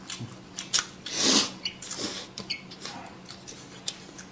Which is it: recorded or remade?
recorded